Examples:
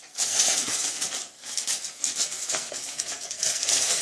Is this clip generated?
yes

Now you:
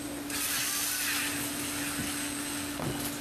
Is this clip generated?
no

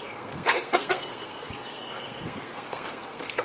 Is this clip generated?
yes